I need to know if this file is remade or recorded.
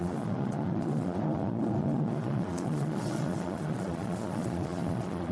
remade